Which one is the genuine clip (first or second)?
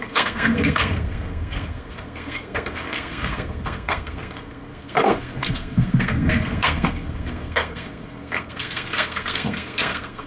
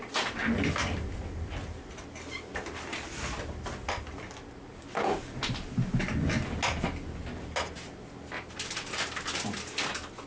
second